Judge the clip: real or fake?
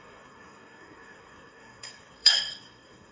fake